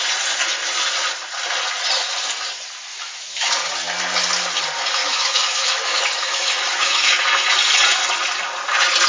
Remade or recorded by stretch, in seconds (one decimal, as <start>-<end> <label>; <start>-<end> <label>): 0.0-2.9 recorded; 2.9-3.5 remade; 3.5-5.0 recorded; 5.0-7.1 remade; 7.1-9.1 recorded